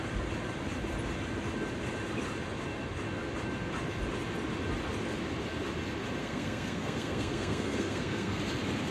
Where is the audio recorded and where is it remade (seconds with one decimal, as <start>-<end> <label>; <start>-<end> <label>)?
0.0-6.2 recorded; 6.2-8.4 remade; 8.4-8.9 recorded